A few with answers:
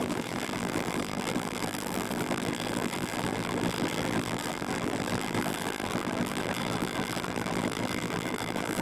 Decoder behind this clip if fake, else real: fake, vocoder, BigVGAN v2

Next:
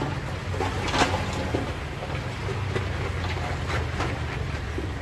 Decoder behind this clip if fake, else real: real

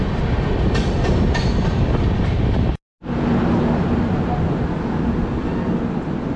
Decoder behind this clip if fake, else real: real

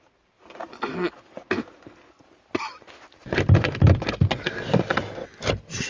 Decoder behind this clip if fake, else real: real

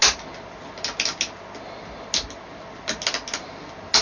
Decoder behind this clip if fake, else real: real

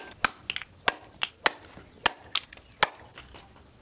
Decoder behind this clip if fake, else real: real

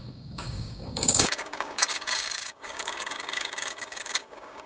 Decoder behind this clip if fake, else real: fake, codec, DAC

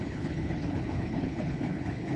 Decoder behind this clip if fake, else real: fake, codec, HILCodec